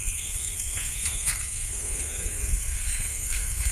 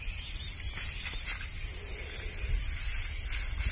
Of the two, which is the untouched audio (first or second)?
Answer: second